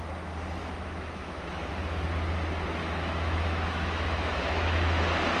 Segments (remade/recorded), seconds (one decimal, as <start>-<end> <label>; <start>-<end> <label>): 0.0-0.6 recorded; 0.6-1.7 remade; 1.7-2.8 recorded; 2.8-5.0 remade; 5.0-5.4 recorded